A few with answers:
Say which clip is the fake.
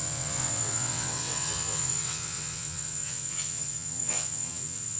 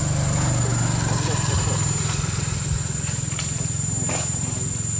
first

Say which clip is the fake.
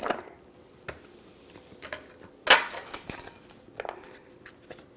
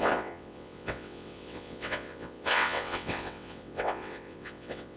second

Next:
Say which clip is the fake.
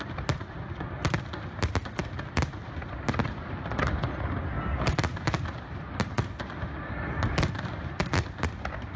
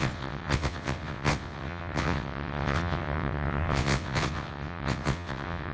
second